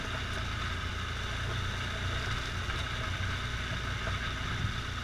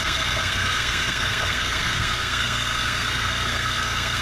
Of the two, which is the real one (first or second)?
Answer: first